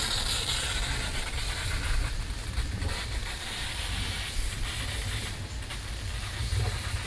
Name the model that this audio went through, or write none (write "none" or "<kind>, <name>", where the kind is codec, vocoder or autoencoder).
none